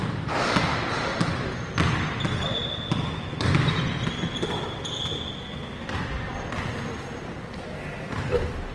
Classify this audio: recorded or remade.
recorded